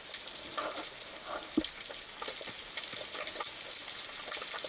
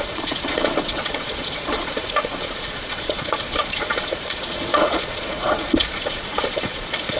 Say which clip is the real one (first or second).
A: first